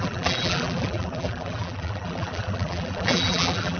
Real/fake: fake